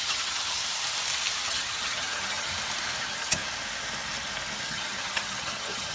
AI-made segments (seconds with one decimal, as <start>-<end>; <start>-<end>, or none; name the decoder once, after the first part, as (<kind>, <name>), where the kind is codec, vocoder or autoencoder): 0.0-0.6 (vocoder, HiFi-GAN); 1.4-2.5; 3.0-3.4; 4.6-5.9